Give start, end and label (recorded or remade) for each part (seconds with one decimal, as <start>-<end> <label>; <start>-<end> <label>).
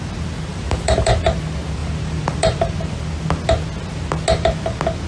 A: 0.0-0.5 recorded; 0.5-1.1 remade; 1.1-1.8 recorded; 1.8-2.7 remade; 2.7-5.1 recorded